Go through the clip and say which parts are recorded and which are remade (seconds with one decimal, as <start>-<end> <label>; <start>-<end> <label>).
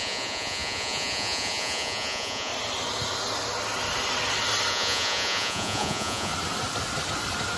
0.0-2.5 remade; 2.5-4.7 recorded; 4.7-6.3 remade; 6.3-7.6 recorded